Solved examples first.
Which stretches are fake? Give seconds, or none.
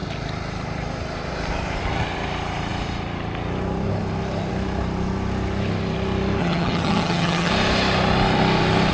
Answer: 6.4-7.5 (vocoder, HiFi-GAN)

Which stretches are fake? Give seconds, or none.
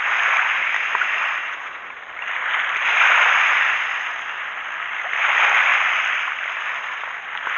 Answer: 1.4-2.0 (vocoder, Vocos)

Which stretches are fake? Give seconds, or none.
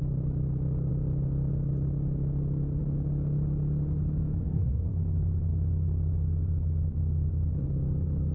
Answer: 4.4-4.9 (codec, SNAC)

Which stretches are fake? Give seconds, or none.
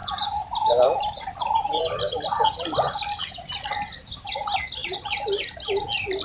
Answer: 0.0-1.8 (vocoder, BigVGAN v2); 4.8-5.8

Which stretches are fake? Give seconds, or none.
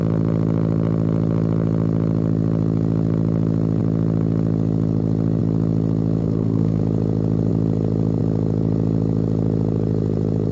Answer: 6.2-6.8 (codec, SNAC)